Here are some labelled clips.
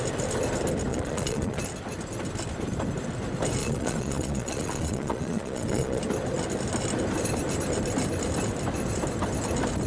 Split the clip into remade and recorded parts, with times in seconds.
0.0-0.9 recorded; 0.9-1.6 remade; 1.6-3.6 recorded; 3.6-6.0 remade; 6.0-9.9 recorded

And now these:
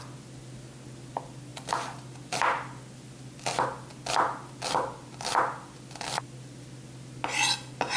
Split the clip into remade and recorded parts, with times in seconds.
0.0-8.0 recorded

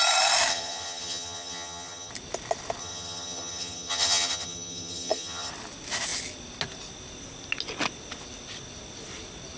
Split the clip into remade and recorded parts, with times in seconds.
0.0-0.5 recorded; 0.5-2.1 remade; 2.1-2.8 recorded; 2.8-5.5 remade; 5.5-9.6 recorded